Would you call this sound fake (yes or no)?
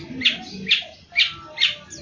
no